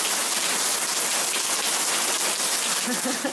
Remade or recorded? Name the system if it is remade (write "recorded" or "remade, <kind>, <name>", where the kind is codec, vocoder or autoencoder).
recorded